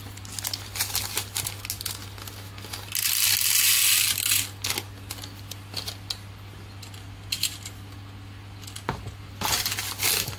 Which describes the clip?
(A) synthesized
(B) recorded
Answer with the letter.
B